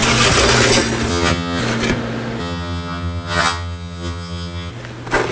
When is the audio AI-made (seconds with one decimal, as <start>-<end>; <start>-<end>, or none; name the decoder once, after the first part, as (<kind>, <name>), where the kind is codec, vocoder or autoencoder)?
1.1-1.6 (vocoder, HiFi-GAN); 2.4-4.7